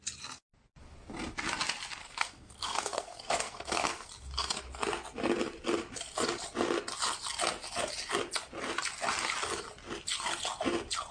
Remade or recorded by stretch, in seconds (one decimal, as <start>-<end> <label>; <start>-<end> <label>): 0.0-2.0 recorded; 2.0-4.1 remade; 4.1-11.1 recorded